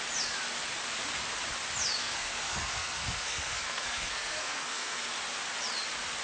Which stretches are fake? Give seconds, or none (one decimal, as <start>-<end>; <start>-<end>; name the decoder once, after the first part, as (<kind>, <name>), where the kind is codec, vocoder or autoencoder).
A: 2.0-5.1 (codec, SNAC)